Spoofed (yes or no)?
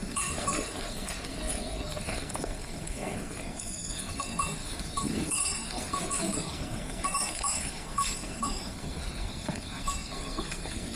yes